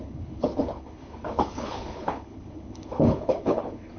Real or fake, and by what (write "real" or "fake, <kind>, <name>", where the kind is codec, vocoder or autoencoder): fake, codec, HILCodec